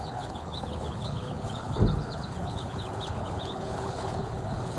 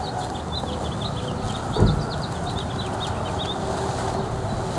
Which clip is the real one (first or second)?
second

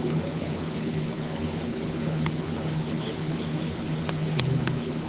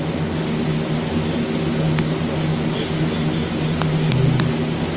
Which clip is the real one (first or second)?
second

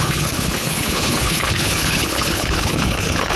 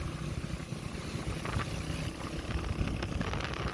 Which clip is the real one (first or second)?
second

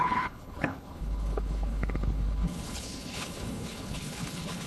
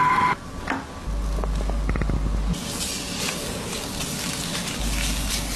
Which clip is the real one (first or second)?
second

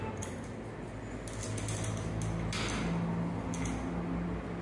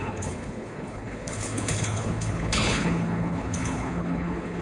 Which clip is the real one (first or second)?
first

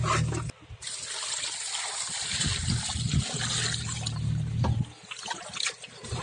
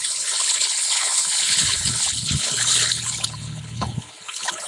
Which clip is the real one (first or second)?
first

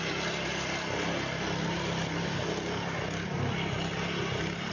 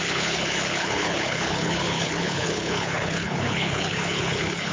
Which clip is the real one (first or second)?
first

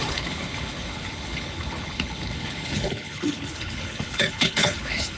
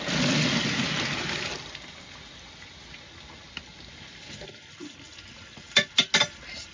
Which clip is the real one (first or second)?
second